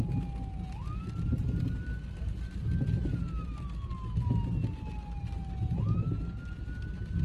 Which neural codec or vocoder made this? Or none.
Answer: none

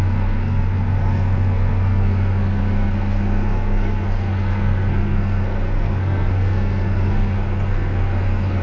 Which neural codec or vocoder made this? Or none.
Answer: codec, SNAC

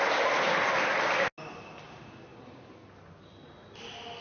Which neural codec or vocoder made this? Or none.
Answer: none